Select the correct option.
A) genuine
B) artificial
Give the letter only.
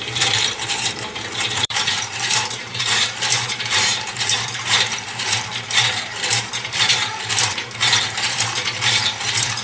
B